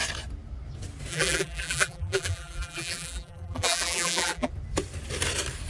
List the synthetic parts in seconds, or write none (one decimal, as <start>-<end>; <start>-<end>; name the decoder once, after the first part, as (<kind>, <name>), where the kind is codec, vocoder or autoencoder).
1.1-4.5 (vocoder, BigVGAN v2)